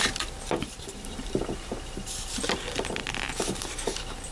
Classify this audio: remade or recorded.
recorded